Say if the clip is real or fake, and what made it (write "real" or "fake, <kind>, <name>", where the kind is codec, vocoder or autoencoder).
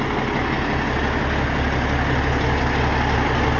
real